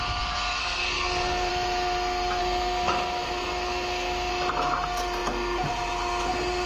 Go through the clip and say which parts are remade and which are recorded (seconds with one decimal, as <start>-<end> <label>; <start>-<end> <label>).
0.0-0.6 recorded; 0.6-1.5 remade; 1.5-2.4 recorded; 2.4-4.3 remade; 4.3-6.7 recorded